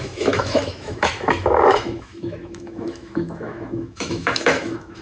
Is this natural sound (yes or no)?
no